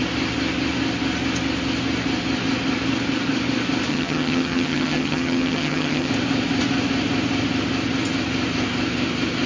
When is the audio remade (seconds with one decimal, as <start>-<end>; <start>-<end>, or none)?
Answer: 3.9-6.1